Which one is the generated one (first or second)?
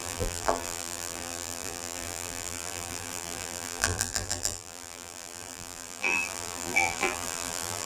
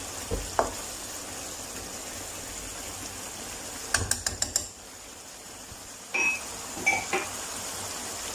first